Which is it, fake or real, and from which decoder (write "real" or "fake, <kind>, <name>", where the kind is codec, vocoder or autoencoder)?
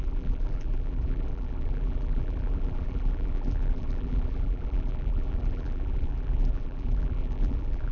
fake, vocoder, BigVGAN v2